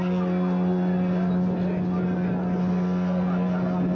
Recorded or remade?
recorded